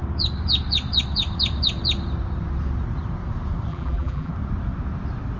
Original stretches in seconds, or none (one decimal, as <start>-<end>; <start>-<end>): 0.0-3.7; 4.3-5.4

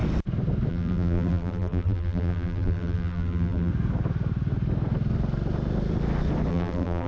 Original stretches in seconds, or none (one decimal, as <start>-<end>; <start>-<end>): 0.0-0.7; 3.7-6.5

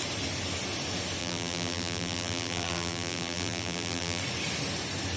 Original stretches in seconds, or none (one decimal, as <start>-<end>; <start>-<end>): 0.0-1.2; 4.2-5.2

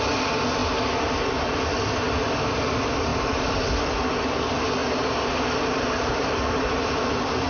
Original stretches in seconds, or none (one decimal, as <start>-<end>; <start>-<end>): 0.0-3.1; 3.8-4.8

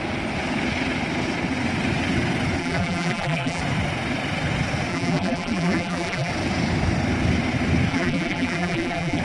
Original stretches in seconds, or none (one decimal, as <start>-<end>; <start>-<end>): 0.0-2.6; 3.6-4.9; 6.3-7.9

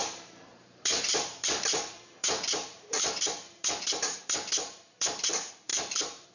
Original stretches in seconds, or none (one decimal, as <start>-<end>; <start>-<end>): none

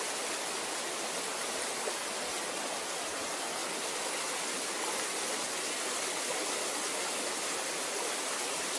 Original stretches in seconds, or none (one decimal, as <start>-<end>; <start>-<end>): 0.0-8.8